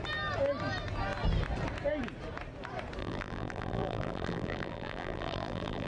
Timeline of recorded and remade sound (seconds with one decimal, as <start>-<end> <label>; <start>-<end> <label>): 0.0-3.0 recorded; 3.0-5.9 remade